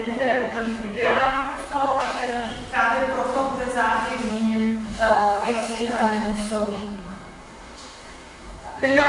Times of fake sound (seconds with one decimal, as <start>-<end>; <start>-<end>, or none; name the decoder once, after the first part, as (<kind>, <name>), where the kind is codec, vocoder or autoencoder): 0.0-2.5 (codec, SNAC); 4.3-9.1